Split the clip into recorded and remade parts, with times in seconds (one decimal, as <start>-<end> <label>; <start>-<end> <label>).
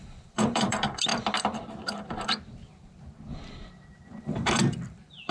0.0-1.1 remade; 1.1-4.2 recorded; 4.2-5.3 remade